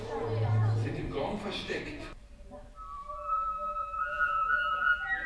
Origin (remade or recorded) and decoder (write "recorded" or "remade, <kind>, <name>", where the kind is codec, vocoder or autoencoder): remade, vocoder, BigVGAN v2